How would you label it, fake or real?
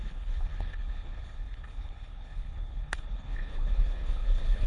fake